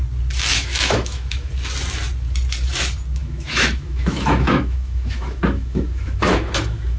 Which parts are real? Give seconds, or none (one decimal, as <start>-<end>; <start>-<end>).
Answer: 0.0-0.5; 1.5-3.2